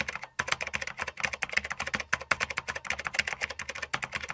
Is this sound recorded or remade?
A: recorded